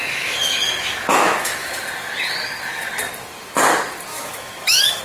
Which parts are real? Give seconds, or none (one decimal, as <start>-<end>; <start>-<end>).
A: 1.7-4.1